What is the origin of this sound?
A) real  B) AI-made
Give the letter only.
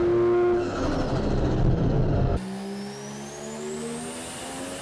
A